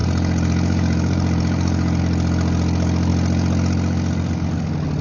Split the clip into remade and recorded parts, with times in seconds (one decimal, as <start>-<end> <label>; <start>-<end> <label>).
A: 0.0-2.0 remade; 2.0-5.0 recorded